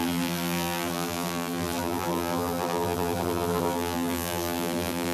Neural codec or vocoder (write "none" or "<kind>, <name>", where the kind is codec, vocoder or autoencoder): vocoder, BigVGAN v2